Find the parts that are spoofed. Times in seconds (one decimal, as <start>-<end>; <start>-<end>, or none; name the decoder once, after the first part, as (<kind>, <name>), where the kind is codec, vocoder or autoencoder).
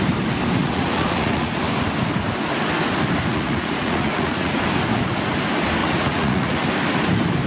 0.6-1.6 (vocoder, Vocos); 3.3-4.6; 5.8-6.6